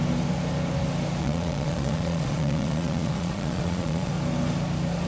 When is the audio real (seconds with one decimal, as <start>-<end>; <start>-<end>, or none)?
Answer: 0.0-1.2; 4.1-5.1